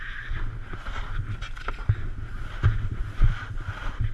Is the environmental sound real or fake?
real